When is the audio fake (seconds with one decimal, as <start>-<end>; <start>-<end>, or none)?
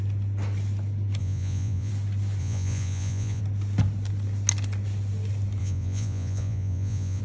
1.2-1.9; 2.4-3.4; 5.6-7.2